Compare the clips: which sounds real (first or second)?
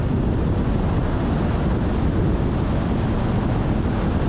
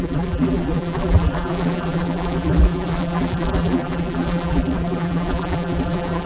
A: first